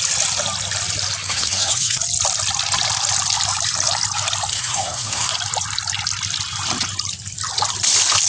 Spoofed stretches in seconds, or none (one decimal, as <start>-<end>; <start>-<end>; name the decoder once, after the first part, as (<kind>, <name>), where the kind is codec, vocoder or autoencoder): 1.2-2.0 (codec, SNAC); 4.5-5.3